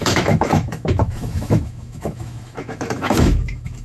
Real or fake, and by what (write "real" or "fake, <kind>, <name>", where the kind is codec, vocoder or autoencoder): fake, autoencoder, DAC-VAE